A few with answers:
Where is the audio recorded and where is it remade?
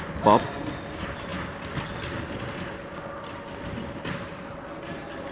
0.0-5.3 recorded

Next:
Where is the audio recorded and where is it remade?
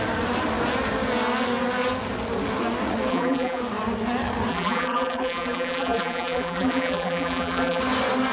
0.0-3.1 recorded; 3.1-3.6 remade; 3.6-4.5 recorded; 4.5-7.8 remade; 7.8-8.3 recorded